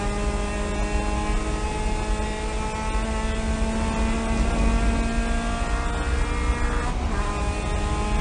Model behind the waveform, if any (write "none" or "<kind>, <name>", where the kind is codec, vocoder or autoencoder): none